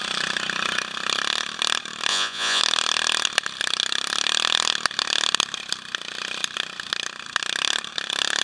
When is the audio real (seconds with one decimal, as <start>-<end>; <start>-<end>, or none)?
0.0-2.1; 2.6-8.4